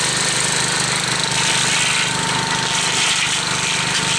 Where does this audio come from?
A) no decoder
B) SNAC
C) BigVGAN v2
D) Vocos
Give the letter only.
A